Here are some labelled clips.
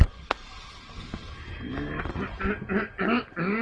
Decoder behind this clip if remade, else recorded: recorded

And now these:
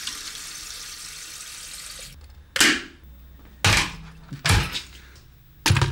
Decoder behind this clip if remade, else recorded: recorded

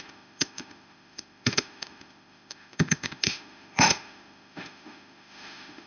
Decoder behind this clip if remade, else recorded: remade, autoencoder, DAC-VAE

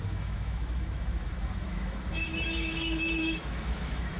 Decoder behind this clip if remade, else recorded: remade, autoencoder, DAC-VAE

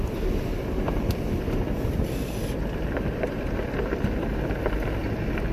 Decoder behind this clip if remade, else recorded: recorded